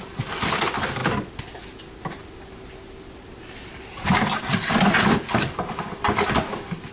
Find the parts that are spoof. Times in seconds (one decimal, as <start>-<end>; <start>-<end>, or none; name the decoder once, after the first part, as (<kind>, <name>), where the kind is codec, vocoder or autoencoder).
none

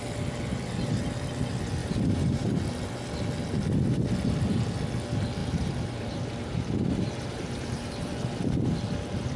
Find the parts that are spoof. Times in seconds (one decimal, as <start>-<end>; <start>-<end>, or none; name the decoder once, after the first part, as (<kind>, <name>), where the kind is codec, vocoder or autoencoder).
1.8-2.5 (vocoder, BigVGAN v2); 5.4-8.1

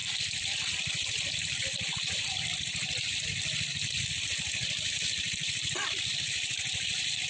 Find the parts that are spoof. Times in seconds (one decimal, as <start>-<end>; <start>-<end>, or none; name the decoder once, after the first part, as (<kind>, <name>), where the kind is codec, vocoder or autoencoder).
0.0-7.3 (vocoder, BigVGAN v2)

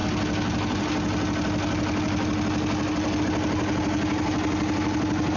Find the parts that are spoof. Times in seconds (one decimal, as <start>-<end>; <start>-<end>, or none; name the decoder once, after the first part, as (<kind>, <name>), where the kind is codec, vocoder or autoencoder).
none

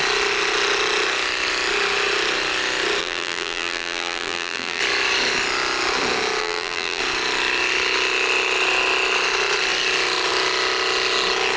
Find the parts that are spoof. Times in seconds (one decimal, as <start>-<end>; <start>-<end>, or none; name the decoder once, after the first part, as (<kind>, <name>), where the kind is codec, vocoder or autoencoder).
3.0-4.8 (vocoder, BigVGAN v2); 6.4-7.0

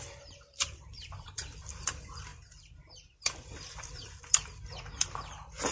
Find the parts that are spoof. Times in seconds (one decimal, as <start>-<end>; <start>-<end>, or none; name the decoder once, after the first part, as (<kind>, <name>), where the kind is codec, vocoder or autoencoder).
0.0-5.7 (vocoder, BigVGAN v2)

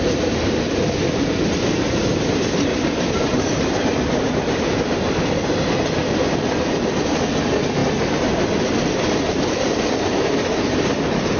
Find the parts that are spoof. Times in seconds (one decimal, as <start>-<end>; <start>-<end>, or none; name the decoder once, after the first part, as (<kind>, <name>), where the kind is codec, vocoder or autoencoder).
2.7-5.7 (vocoder, BigVGAN v2)